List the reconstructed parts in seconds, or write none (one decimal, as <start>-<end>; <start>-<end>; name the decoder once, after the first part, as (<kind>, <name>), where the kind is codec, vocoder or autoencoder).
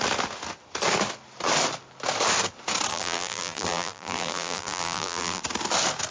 2.9-5.4 (vocoder, BigVGAN v2)